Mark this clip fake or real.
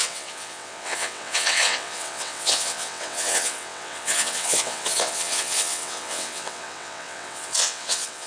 fake